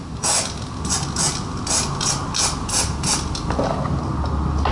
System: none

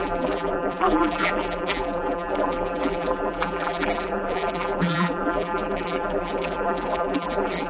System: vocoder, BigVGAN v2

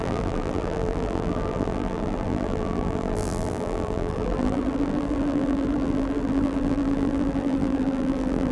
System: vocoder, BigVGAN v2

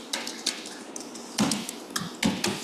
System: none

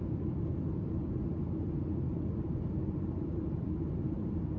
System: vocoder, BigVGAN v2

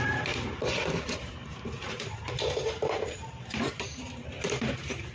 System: vocoder, BigVGAN v2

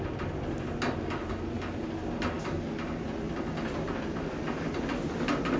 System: none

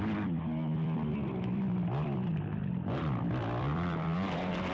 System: vocoder, BigVGAN v2